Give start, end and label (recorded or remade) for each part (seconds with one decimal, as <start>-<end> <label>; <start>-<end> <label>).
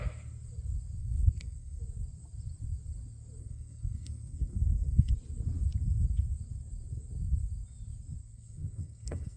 0.0-1.0 recorded; 1.0-1.8 remade; 1.8-3.4 recorded; 3.4-5.1 remade; 5.1-8.2 recorded; 8.2-9.4 remade